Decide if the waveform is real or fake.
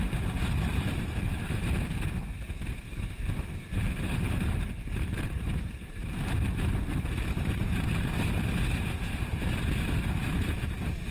fake